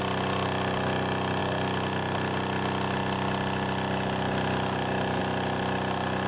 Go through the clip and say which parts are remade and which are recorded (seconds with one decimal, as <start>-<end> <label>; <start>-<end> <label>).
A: 0.0-6.3 recorded